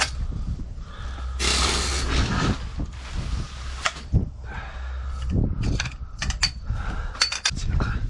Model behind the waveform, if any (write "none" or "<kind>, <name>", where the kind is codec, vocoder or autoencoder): none